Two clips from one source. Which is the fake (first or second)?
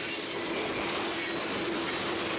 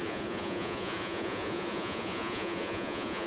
second